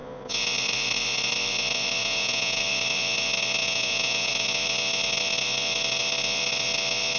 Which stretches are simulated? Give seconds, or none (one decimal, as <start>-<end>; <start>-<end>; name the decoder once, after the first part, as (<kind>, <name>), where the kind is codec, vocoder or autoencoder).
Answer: 2.0-2.6 (vocoder, Vocos); 3.6-4.3